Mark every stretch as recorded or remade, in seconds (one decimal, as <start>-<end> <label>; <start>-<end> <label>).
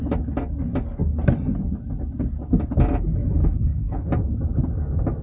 0.0-3.4 recorded; 3.4-4.1 remade; 4.1-5.2 recorded